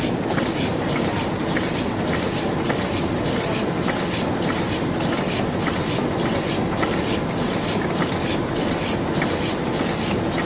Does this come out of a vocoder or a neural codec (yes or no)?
no